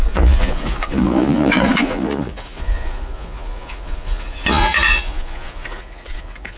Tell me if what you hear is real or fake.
fake